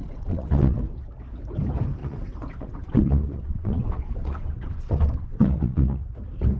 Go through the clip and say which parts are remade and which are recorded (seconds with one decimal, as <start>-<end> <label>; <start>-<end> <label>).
0.0-0.8 remade; 0.8-2.0 recorded; 2.0-6.0 remade; 6.0-6.6 recorded